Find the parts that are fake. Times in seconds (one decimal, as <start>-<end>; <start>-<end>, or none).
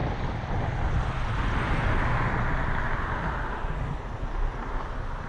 none